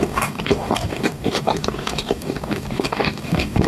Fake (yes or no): yes